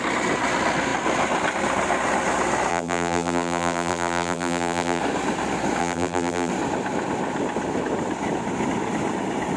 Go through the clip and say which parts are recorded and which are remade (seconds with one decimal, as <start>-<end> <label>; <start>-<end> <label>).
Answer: 0.0-2.7 recorded; 2.7-5.0 remade; 5.0-5.8 recorded; 5.8-6.5 remade; 6.5-9.6 recorded